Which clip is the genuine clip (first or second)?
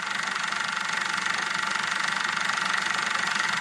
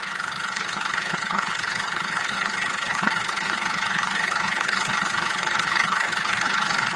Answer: first